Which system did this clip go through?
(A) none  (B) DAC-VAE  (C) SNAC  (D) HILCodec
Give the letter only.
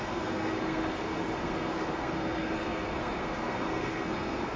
C